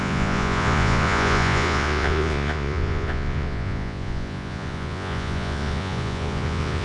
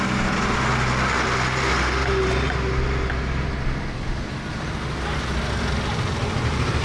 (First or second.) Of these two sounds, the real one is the second